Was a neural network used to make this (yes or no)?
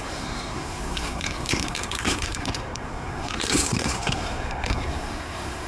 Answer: yes